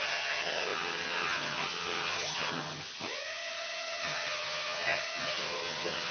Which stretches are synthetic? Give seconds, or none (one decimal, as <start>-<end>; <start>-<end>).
0.0-6.1

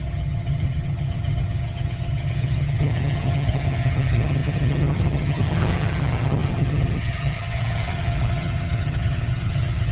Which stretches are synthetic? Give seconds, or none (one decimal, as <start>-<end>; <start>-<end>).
0.0-9.9

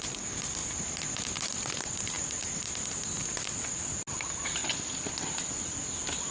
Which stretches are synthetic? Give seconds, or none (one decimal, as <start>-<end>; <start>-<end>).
none

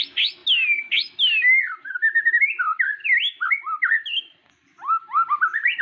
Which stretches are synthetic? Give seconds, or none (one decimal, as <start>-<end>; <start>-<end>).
none

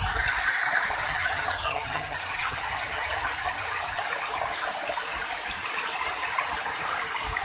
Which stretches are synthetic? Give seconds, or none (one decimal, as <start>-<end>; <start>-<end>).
1.0-4.0

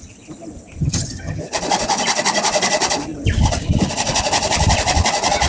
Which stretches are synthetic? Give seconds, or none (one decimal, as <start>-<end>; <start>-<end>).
0.8-1.4

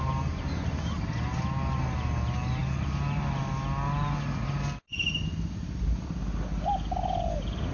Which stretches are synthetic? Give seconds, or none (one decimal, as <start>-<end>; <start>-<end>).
none

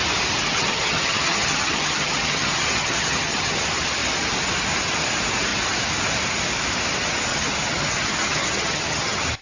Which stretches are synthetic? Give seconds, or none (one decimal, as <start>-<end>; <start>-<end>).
0.5-3.6; 7.3-9.4